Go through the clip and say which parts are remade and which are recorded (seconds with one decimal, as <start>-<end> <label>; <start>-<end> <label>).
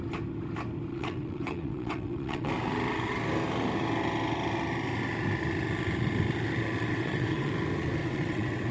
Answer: 0.0-0.9 recorded; 0.9-2.5 remade; 2.5-6.9 recorded; 6.9-7.5 remade; 7.5-8.0 recorded; 8.0-8.7 remade